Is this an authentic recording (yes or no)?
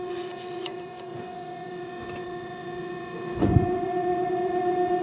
no